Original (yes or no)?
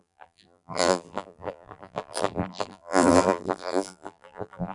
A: no